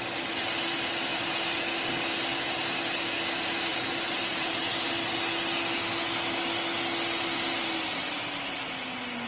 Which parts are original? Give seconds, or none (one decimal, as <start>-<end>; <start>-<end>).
0.0-3.7; 4.6-9.3